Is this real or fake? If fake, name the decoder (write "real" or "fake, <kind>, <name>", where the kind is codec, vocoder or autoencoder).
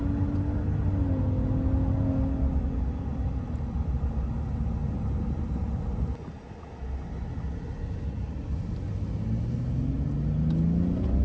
real